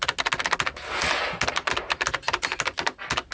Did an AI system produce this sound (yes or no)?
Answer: no